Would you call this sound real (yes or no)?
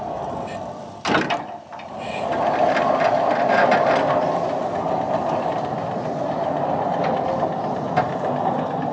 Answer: yes